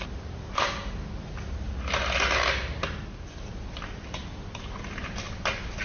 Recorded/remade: recorded